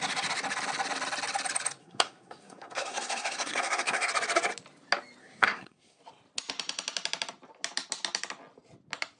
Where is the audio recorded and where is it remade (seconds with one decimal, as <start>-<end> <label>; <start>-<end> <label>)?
0.0-1.8 recorded; 1.8-4.1 remade; 4.1-5.2 recorded; 5.2-6.0 remade; 6.0-9.2 recorded